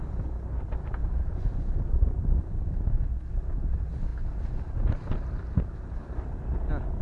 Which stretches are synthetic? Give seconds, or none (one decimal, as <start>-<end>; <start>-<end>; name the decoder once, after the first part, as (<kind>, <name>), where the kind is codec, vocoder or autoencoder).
1.0-2.5 (vocoder, BigVGAN v2)